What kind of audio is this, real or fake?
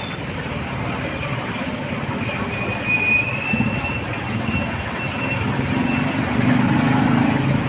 real